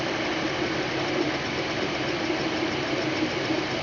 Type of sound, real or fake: real